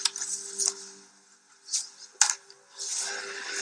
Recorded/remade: recorded